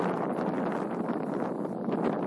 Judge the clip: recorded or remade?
recorded